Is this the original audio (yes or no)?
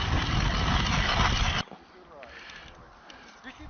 yes